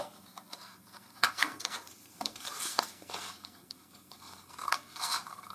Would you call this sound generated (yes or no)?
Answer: yes